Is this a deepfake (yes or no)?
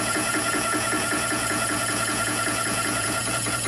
yes